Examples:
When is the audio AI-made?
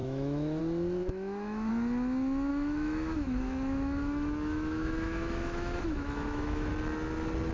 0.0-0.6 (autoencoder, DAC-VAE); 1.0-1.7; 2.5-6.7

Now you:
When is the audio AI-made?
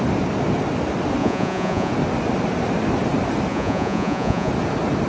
1.2-1.9 (vocoder, Vocos); 3.5-4.5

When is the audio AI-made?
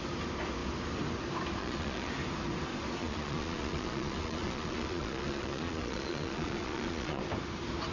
1.6-2.1 (vocoder, Vocos); 3.0-7.2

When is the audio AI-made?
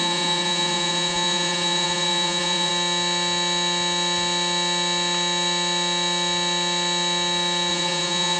0.0-2.7 (vocoder, Vocos); 7.7-8.4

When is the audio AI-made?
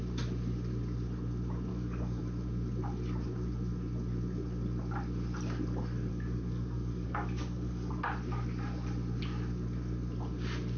1.7-2.2 (codec, DAC); 6.1-7.9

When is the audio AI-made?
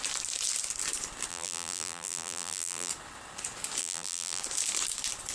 1.3-2.9 (vocoder, BigVGAN v2); 3.8-4.4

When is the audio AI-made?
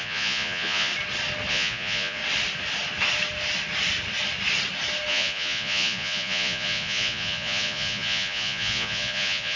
0.0-0.9 (vocoder, Vocos); 1.5-2.2; 5.1-9.6